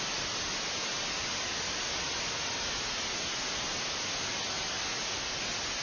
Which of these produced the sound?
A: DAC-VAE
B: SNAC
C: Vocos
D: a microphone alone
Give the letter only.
D